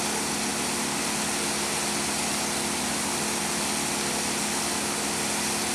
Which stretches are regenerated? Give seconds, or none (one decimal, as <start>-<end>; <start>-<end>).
none